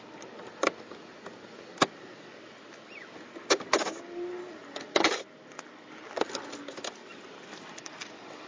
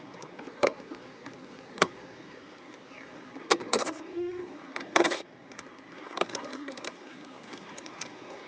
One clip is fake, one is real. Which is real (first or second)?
first